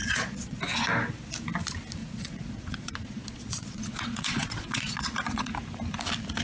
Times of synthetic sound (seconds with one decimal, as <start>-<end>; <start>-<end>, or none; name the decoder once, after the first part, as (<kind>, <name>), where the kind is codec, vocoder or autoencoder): 0.0-0.6 (vocoder, Vocos); 2.0-5.5